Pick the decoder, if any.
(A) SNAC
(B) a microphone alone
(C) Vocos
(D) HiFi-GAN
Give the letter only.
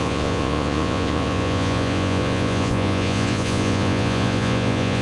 C